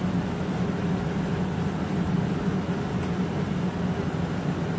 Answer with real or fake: real